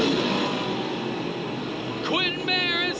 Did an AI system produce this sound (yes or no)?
no